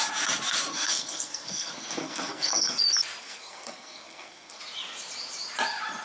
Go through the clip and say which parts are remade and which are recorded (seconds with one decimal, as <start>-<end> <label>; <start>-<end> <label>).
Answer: 0.0-0.7 recorded; 0.7-2.8 remade; 2.8-3.2 recorded; 3.2-4.6 remade; 4.6-6.0 recorded